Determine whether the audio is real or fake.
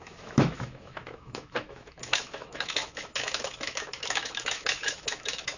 fake